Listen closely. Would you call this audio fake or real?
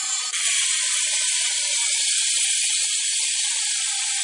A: real